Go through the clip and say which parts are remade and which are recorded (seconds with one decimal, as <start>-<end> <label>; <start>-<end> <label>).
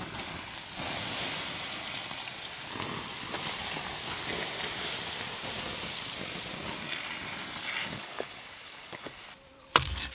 0.0-7.8 recorded; 7.8-9.2 remade; 9.2-10.1 recorded